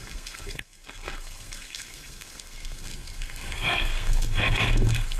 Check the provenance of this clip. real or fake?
fake